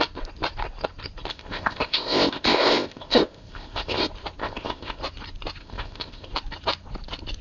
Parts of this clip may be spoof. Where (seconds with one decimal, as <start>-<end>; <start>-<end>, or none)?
1.3-4.0; 4.4-5.0; 5.6-6.3